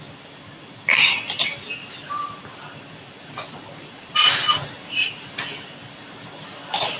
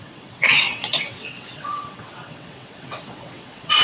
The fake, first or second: second